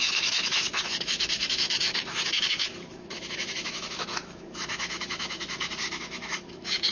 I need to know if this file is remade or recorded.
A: remade